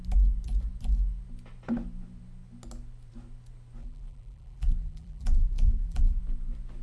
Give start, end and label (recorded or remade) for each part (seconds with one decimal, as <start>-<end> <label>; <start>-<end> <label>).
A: 0.0-3.8 recorded; 3.8-6.2 remade; 6.2-6.8 recorded